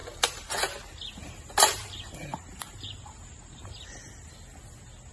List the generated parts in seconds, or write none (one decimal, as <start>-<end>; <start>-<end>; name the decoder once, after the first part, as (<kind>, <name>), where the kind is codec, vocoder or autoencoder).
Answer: 0.0-0.6 (vocoder, BigVGAN v2); 1.2-4.3